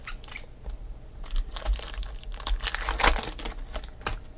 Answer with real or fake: real